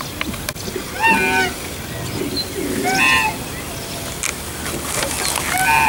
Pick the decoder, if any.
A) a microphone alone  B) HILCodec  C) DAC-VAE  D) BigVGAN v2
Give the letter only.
A